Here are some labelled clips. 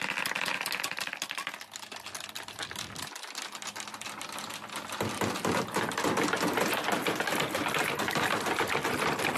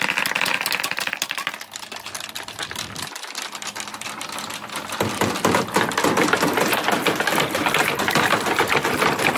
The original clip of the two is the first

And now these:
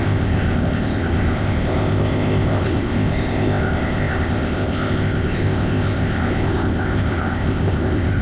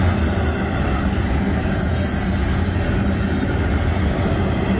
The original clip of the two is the second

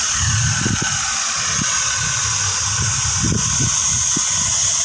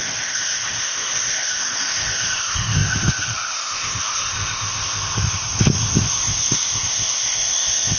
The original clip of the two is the first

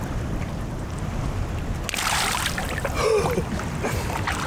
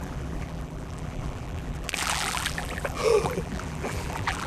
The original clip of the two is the first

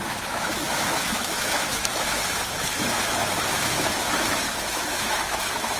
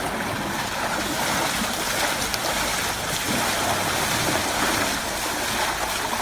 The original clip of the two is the second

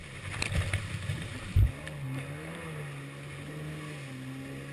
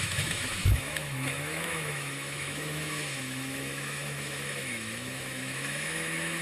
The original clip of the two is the first